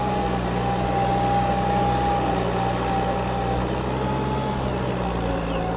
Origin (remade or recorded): recorded